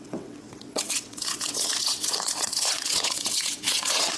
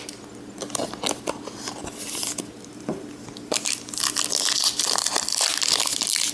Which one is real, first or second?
second